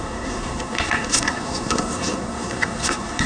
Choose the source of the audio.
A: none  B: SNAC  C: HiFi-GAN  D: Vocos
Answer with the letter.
B